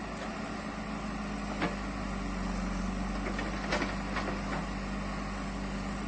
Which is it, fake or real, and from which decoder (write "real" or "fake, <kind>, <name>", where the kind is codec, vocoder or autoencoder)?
real